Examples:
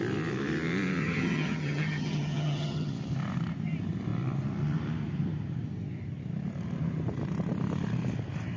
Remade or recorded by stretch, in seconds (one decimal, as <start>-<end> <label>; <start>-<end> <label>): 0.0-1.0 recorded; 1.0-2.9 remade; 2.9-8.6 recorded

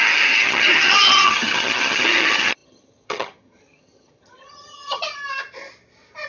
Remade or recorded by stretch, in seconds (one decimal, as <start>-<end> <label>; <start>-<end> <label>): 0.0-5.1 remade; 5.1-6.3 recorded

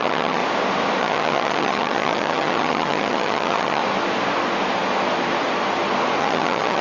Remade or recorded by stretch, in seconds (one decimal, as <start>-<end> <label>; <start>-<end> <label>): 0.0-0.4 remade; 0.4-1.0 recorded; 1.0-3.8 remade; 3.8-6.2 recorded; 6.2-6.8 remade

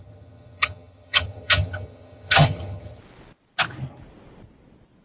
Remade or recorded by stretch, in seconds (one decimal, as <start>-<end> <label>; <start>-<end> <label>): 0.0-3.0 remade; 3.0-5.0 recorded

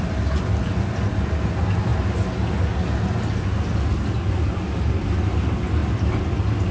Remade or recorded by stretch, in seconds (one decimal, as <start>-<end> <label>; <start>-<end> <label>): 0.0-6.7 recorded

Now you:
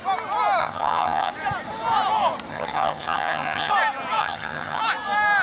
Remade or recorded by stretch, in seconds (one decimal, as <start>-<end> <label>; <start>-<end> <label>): 0.0-0.6 recorded; 0.6-1.3 remade; 1.3-2.5 recorded; 2.5-3.7 remade; 3.7-4.2 recorded; 4.2-4.8 remade; 4.8-5.4 recorded

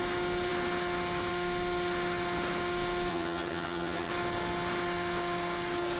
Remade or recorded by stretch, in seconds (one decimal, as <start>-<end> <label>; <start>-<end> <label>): 0.0-3.1 recorded; 3.1-4.1 remade; 4.1-6.0 recorded

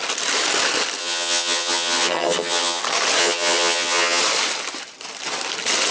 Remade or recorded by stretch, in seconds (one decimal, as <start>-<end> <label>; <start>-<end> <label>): 0.0-1.0 recorded; 1.0-2.8 remade; 2.8-3.2 recorded; 3.2-4.2 remade; 4.2-5.9 recorded